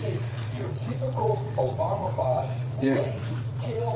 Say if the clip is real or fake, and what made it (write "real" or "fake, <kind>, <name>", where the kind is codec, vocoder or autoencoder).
fake, vocoder, Vocos